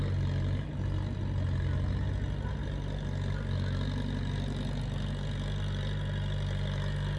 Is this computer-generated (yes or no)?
no